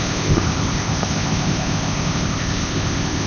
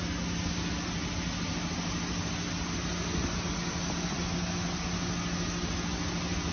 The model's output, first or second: first